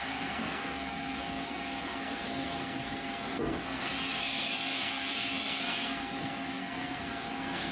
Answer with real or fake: fake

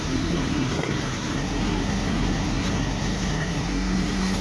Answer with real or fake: fake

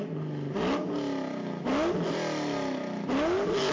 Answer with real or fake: real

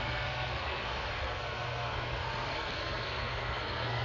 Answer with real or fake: fake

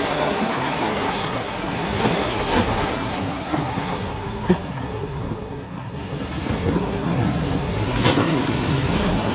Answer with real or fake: fake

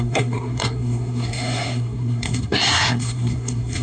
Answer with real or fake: fake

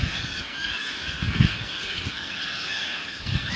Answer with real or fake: fake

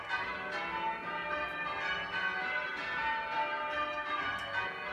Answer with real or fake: real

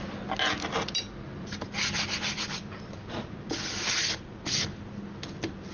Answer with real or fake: real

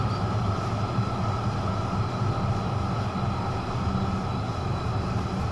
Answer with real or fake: real